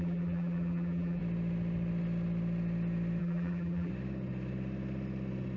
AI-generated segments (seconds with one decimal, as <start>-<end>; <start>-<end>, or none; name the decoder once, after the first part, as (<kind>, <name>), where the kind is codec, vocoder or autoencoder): 0.0-1.2 (vocoder, BigVGAN v2); 3.2-3.9